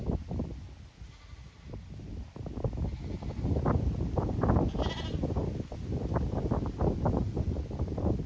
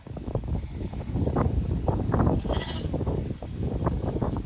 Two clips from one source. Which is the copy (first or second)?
second